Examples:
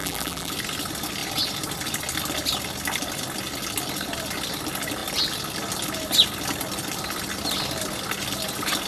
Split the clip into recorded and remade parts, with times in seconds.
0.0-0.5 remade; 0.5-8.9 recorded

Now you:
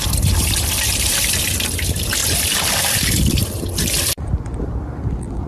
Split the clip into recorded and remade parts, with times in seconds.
0.0-2.2 remade; 2.2-2.7 recorded; 2.7-5.5 remade

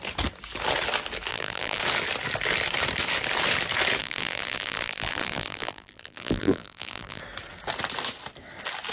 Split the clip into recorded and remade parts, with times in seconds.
0.0-1.3 recorded; 1.3-1.8 remade; 1.8-4.0 recorded; 4.0-7.2 remade; 7.2-8.9 recorded

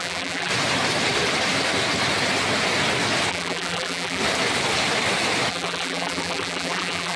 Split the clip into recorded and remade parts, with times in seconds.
0.0-0.5 remade; 0.5-3.3 recorded; 3.3-4.2 remade; 4.2-5.5 recorded; 5.5-7.2 remade

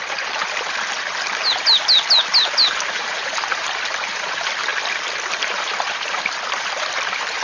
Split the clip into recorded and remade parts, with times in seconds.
0.0-0.4 remade; 0.4-2.9 recorded; 2.9-4.7 remade; 4.7-5.3 recorded; 5.3-7.4 remade

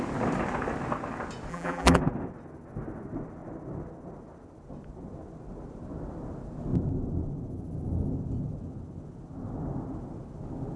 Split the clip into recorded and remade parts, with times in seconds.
0.0-1.5 recorded; 1.5-2.0 remade; 2.0-10.8 recorded

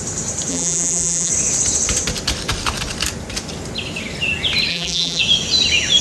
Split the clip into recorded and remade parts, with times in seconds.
0.0-0.5 recorded; 0.5-1.3 remade; 1.3-4.7 recorded; 4.7-5.2 remade; 5.2-6.0 recorded